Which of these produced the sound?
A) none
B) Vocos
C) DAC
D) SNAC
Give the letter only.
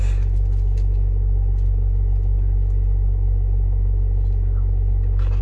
A